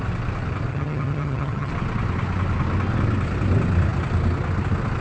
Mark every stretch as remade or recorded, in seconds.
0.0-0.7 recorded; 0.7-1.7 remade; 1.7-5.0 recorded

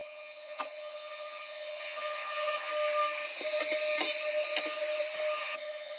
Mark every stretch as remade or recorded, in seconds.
0.0-2.7 remade; 2.7-5.4 recorded; 5.4-6.0 remade